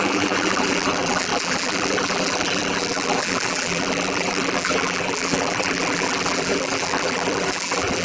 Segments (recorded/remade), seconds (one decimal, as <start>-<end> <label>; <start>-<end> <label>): 0.0-8.0 remade